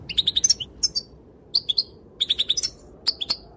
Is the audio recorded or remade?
recorded